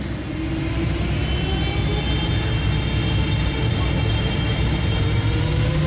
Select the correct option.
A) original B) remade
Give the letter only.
A